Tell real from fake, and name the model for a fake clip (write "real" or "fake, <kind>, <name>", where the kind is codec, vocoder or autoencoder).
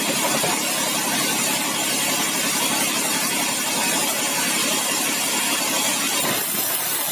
real